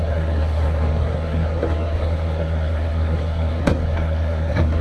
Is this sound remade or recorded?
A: remade